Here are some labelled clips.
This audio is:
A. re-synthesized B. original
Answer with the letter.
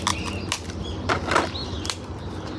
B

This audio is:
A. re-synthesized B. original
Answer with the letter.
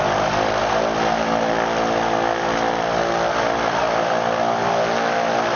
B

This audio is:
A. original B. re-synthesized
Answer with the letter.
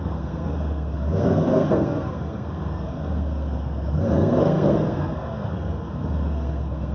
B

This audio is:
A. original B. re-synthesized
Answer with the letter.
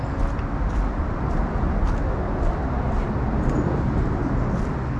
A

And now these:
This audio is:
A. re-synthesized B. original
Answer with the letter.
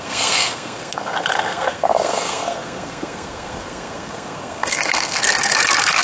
A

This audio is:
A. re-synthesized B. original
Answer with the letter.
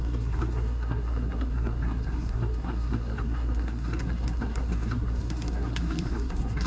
A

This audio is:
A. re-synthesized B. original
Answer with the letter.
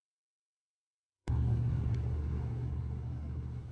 A